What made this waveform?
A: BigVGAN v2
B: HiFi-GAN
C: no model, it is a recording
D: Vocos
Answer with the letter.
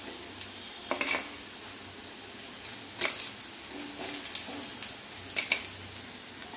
C